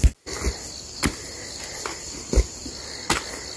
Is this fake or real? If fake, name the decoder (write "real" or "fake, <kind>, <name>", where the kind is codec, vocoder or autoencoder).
real